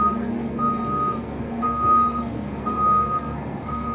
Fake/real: fake